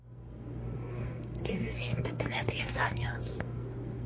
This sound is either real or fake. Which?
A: fake